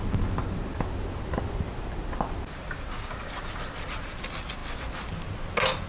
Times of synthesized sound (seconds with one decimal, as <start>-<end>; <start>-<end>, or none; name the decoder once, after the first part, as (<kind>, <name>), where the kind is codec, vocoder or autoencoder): none